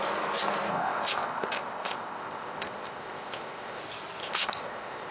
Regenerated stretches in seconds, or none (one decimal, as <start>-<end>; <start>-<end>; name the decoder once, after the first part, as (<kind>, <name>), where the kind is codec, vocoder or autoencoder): 0.7-3.8 (codec, ZipCodec); 4.2-5.1

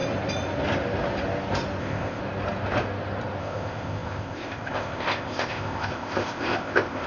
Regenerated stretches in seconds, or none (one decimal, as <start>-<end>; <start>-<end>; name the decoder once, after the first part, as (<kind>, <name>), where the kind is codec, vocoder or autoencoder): 1.8-2.2 (codec, ZipCodec); 3.4-7.1

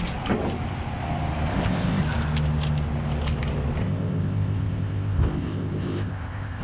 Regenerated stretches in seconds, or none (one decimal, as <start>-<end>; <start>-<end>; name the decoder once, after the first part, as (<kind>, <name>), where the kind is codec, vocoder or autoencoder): 1.5-2.0 (codec, ZipCodec); 3.8-6.6